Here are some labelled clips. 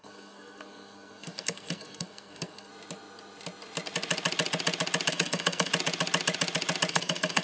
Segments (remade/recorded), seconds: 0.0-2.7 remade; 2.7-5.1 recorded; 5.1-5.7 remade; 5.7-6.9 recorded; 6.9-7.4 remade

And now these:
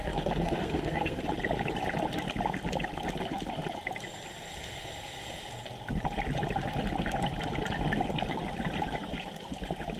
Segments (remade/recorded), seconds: 0.0-1.2 remade; 1.2-10.0 recorded

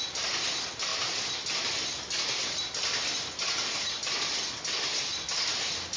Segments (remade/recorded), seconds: 0.0-6.0 recorded

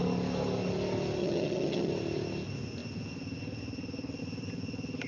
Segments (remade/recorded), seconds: 0.0-1.2 recorded; 1.2-1.9 remade; 1.9-5.1 recorded

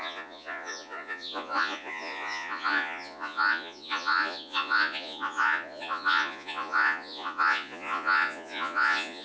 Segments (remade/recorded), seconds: 0.0-9.2 remade

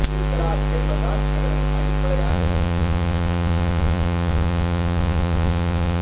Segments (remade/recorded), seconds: 0.0-2.3 recorded; 2.3-6.0 remade

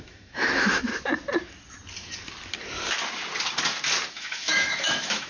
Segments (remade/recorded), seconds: 0.0-0.9 remade; 0.9-4.1 recorded; 4.1-5.3 remade